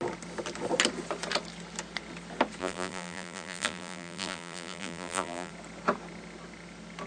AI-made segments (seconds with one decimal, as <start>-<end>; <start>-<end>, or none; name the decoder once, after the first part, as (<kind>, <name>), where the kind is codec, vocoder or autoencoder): 2.6-5.5 (vocoder, BigVGAN v2)